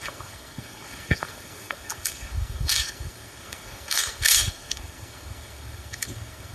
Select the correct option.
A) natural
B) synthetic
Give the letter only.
B